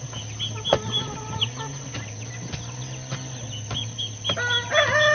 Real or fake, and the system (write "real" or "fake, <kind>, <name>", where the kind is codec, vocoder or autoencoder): real